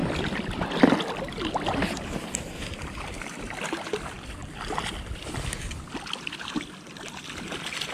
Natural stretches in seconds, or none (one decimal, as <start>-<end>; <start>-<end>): 0.0-7.9